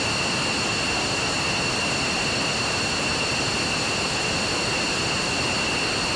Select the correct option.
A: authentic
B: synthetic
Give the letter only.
A